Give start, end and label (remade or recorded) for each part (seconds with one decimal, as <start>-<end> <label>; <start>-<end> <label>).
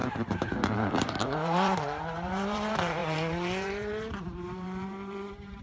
0.0-5.6 remade